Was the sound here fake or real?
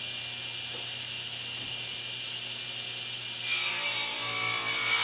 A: real